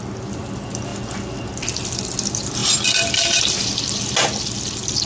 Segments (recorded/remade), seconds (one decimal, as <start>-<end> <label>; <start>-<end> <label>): 0.0-5.1 recorded